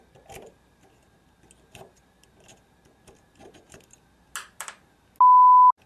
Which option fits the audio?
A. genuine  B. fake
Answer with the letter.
A